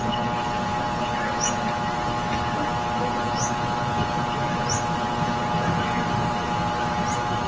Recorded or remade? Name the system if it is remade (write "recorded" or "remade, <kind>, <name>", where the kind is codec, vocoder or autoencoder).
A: recorded